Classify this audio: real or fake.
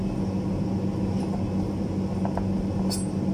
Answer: real